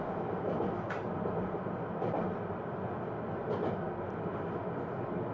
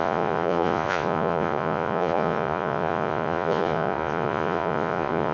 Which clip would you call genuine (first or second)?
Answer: first